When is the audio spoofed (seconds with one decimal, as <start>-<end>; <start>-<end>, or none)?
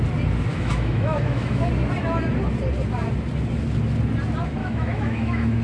0.5-1.7; 4.6-5.6